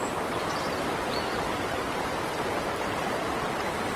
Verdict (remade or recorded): recorded